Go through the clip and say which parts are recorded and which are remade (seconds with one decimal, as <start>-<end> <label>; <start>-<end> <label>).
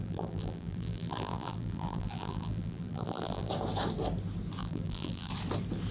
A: 0.0-3.5 remade; 3.5-4.6 recorded; 4.6-5.3 remade; 5.3-5.9 recorded